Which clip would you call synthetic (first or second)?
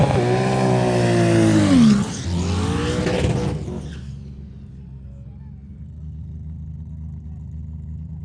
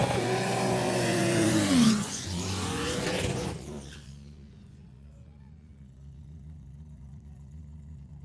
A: second